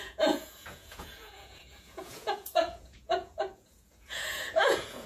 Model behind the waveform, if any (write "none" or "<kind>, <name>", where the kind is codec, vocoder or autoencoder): vocoder, Vocos